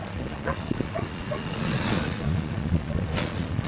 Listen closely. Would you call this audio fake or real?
fake